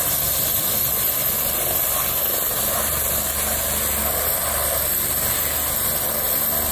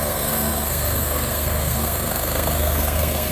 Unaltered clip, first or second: first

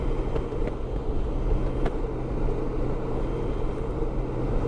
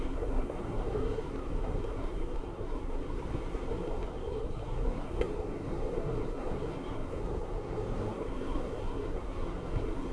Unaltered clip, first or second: first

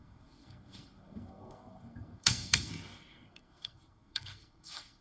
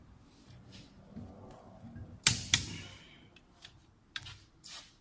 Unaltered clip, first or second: second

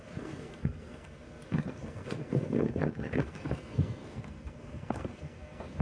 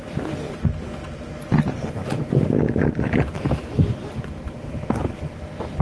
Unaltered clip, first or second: second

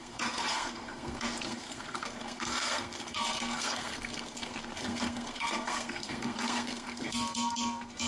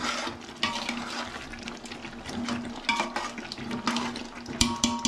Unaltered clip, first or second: second